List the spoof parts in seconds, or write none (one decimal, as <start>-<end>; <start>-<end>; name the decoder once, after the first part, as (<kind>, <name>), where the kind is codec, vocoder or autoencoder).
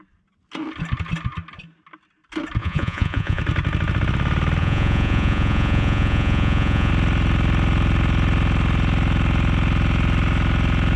2.6-3.4 (vocoder, Vocos); 4.6-6.9